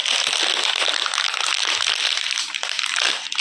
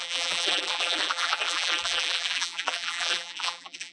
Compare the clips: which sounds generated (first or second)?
second